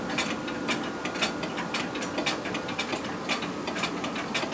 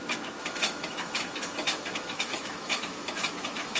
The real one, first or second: first